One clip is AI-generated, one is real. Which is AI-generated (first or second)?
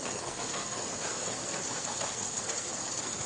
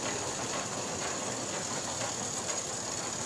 first